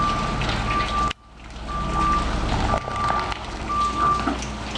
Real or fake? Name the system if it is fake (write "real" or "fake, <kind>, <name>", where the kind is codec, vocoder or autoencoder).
real